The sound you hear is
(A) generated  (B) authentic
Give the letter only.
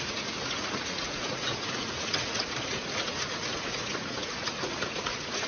A